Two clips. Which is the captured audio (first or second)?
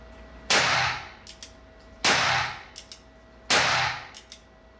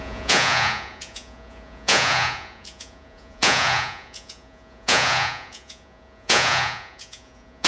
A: first